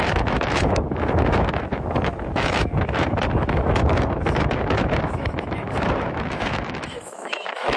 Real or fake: fake